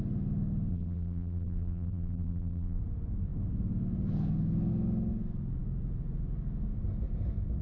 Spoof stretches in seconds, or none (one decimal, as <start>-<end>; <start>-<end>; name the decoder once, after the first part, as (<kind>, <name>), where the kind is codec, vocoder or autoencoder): 0.7-2.8 (vocoder, BigVGAN v2)